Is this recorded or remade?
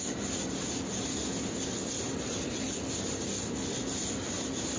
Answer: recorded